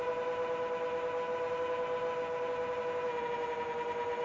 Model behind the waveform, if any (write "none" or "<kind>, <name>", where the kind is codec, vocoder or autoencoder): none